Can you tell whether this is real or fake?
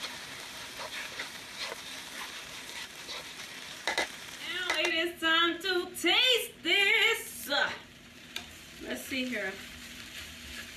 fake